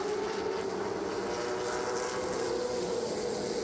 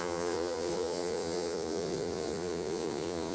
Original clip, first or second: first